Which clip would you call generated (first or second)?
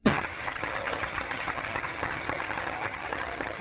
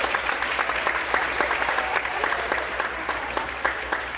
first